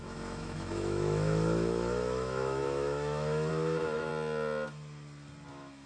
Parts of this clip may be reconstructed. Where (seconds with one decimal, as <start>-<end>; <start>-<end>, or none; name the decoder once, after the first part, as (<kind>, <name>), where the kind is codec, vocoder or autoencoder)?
0.0-4.1 (autoencoder, DAC-VAE); 5.5-5.9